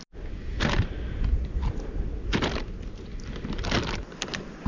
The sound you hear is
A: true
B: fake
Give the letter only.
A